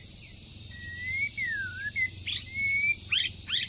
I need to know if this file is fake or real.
real